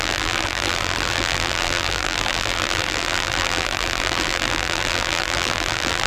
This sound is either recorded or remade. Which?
remade